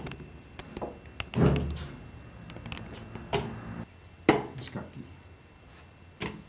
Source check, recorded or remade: recorded